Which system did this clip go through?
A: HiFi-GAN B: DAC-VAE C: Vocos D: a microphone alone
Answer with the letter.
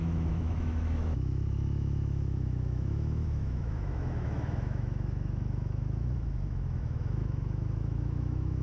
B